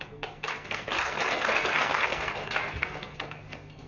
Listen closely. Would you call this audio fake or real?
fake